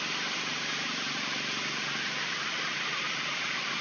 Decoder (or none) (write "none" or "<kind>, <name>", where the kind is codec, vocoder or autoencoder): none